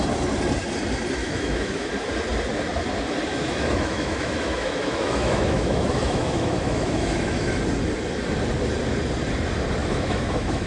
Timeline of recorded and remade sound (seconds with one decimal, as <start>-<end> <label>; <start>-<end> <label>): 0.0-1.2 recorded; 1.2-1.9 remade; 1.9-3.3 recorded; 3.3-7.6 remade; 7.6-9.8 recorded; 9.8-10.7 remade